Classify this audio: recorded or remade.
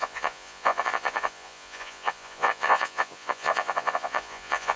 remade